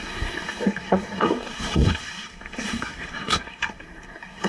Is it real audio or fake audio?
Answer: fake